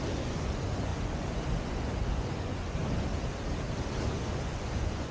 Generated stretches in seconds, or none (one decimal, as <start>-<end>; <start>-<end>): 0.0-2.8; 4.0-5.1